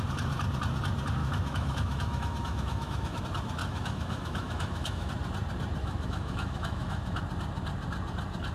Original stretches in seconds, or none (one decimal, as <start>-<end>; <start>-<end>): 0.0-1.2; 3.2-3.6; 5.1-5.8; 7.2-8.5